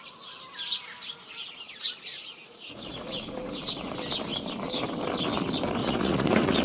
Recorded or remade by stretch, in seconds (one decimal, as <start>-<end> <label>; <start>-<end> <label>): 0.0-2.1 recorded; 2.1-3.9 remade; 3.9-5.8 recorded; 5.8-6.6 remade